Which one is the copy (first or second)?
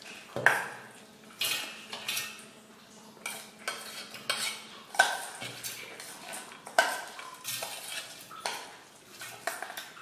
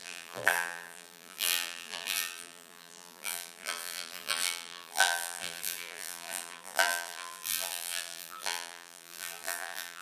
second